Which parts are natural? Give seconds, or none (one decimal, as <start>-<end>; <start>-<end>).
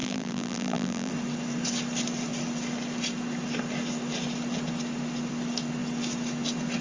1.1-6.8